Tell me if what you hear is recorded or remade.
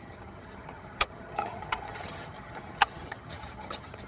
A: remade